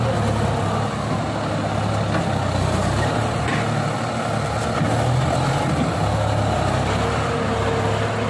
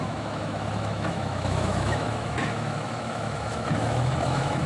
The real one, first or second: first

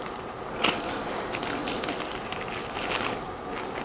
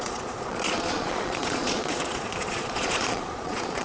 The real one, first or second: first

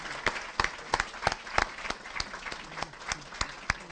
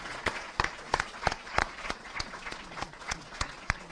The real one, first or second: first